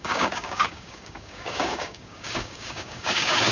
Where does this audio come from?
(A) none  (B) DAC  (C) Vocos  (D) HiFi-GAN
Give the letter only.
B